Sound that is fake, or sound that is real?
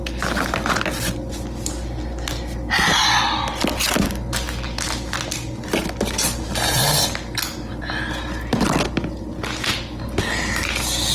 real